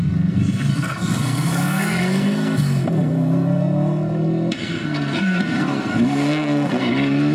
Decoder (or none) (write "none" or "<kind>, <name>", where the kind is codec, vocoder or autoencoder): codec, SNAC